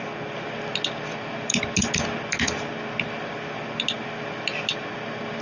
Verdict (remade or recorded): recorded